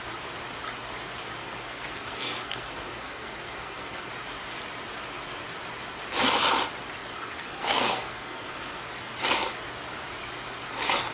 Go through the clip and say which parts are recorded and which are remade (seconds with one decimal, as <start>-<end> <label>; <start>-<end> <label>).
0.0-1.4 recorded; 1.4-4.1 remade; 4.1-7.1 recorded; 7.1-8.8 remade; 8.8-11.1 recorded